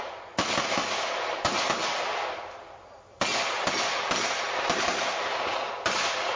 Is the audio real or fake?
real